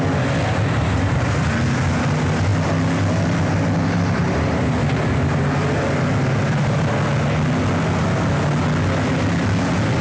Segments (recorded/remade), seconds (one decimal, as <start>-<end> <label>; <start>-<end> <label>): 0.0-10.0 recorded